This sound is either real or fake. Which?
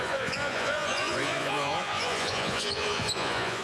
fake